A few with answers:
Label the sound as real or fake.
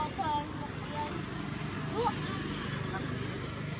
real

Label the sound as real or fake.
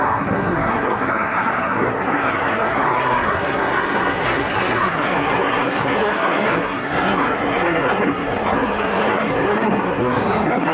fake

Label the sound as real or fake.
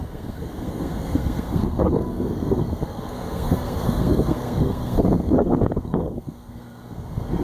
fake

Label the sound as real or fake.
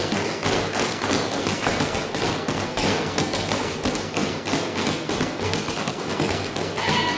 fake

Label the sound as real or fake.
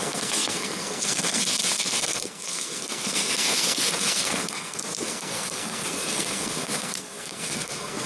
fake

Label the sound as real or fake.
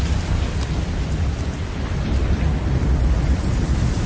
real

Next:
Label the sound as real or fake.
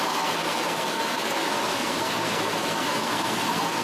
fake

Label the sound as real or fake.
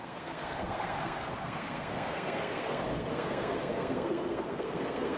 fake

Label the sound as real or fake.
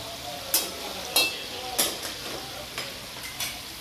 real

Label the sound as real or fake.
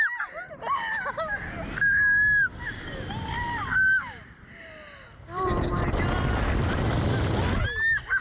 real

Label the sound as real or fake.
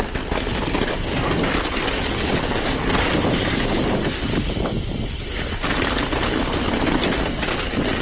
real